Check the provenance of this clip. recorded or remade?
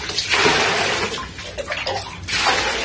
recorded